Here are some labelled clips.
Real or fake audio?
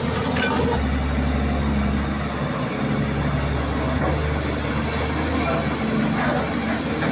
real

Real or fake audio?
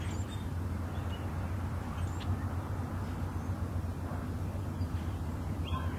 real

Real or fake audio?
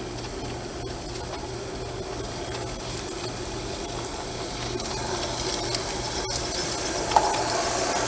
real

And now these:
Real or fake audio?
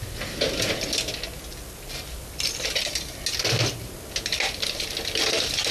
real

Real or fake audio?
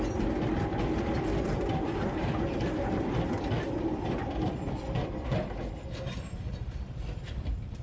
real